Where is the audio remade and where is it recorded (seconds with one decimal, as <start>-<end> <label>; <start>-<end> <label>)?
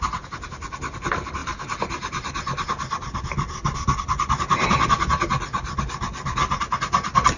0.0-7.4 recorded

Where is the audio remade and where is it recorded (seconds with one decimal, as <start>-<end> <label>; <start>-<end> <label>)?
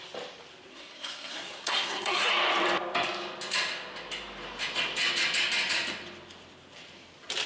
0.0-0.7 recorded; 0.7-2.3 remade; 2.3-7.5 recorded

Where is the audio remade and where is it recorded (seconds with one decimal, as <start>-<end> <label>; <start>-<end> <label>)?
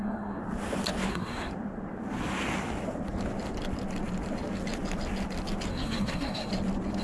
0.0-0.4 remade; 0.4-1.1 recorded; 1.1-1.5 remade; 1.5-5.7 recorded; 5.7-6.5 remade; 6.5-7.0 recorded